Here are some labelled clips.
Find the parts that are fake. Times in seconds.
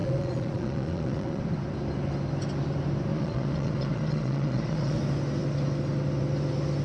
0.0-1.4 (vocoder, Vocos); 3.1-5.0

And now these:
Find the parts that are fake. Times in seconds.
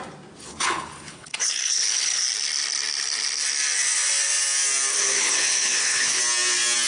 0.5-2.2 (codec, HILCodec); 4.9-6.2